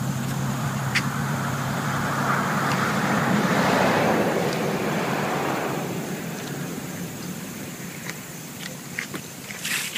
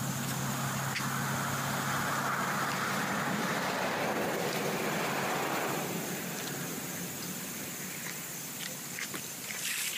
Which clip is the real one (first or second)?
second